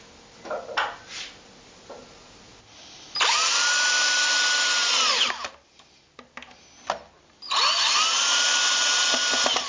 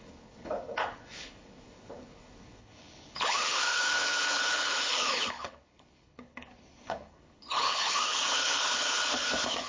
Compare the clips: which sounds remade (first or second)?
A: second